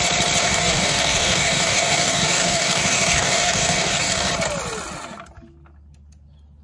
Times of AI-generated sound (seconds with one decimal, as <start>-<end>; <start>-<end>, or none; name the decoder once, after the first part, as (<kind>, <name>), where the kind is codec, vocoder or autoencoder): 0.4-4.3 (codec, DAC)